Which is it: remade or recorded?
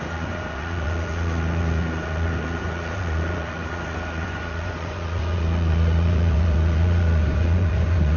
remade